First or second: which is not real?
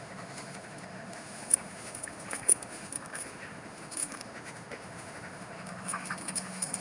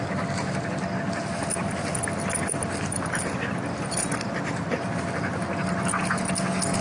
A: first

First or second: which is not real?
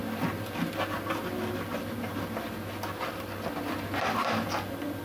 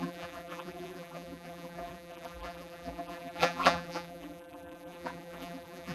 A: second